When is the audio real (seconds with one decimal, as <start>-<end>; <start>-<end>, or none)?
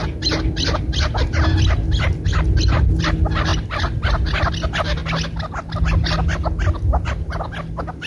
0.0-8.1